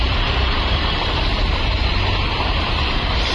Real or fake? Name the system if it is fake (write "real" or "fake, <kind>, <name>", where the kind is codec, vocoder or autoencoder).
fake, vocoder, BigVGAN v2